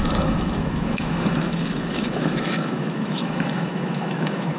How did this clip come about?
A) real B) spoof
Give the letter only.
B